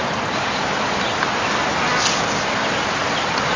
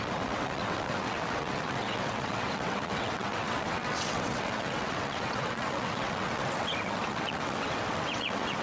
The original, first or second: first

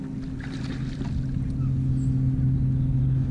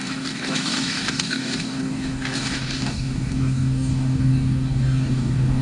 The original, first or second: first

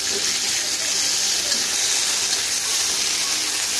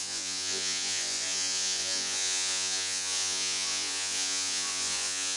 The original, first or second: first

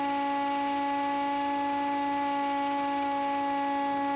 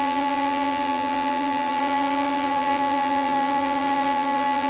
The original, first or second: first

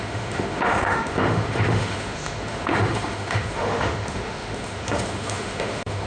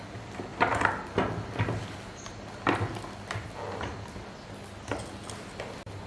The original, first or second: second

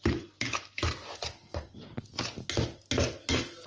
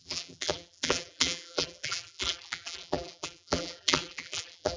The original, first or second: first